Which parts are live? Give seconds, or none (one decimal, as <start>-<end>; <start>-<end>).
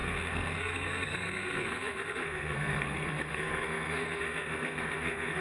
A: none